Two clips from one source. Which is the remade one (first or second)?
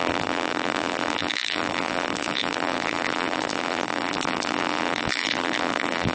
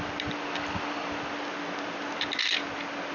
first